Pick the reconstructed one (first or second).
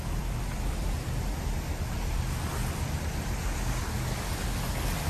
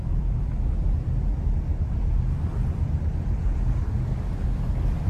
second